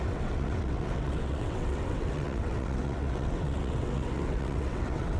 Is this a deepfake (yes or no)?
yes